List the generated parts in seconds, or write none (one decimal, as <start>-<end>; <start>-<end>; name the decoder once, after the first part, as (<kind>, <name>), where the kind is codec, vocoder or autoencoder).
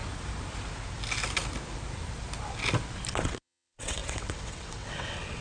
3.2-5.4 (vocoder, WaveNeXt)